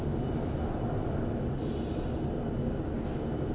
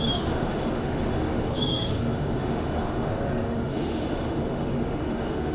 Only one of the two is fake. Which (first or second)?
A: second